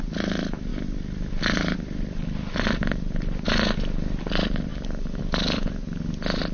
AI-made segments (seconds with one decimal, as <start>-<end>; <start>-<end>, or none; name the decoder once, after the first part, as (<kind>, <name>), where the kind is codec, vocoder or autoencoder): none